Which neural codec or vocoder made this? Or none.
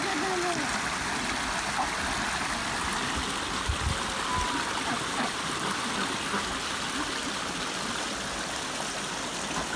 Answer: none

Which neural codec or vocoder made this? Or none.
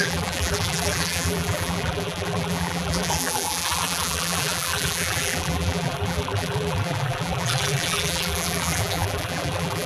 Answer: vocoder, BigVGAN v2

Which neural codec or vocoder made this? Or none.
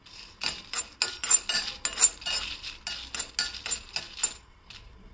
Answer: none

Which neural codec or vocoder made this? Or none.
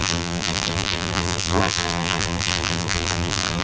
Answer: vocoder, BigVGAN v2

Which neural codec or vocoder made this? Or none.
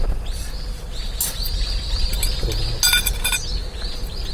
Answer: none